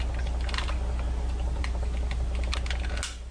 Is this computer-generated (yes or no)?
no